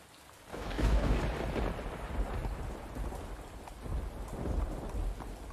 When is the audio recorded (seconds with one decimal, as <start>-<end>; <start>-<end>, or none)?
0.0-0.5; 1.2-5.5